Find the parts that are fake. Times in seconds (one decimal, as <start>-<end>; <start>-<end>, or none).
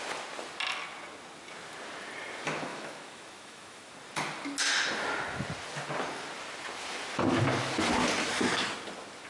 2.7-3.9